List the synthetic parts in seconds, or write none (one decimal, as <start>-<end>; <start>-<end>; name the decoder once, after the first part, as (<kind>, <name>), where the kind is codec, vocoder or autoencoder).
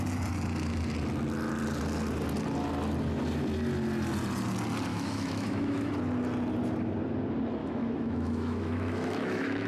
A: 4.9-5.9 (autoencoder, DAC-VAE); 7.6-9.7